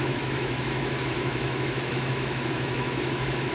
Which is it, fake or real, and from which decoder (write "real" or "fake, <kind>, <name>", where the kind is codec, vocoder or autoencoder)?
fake, autoencoder, DAC-VAE